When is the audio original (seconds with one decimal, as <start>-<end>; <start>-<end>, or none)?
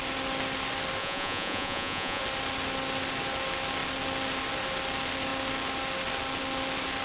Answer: 0.0-1.0; 2.2-7.0